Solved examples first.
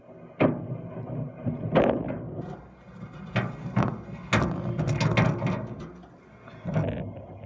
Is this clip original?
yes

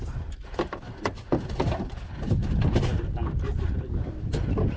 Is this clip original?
yes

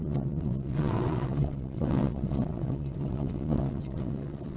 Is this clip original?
no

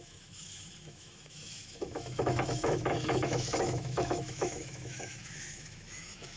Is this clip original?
no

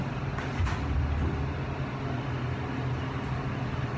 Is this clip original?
yes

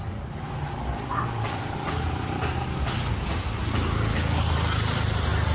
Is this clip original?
yes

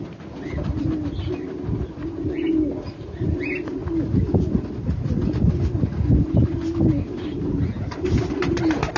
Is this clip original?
yes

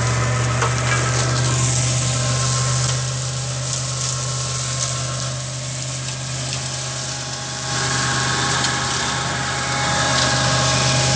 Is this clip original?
yes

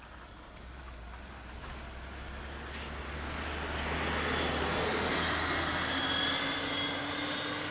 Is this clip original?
yes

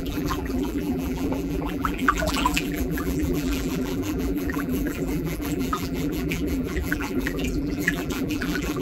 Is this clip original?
no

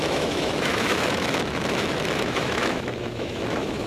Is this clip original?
no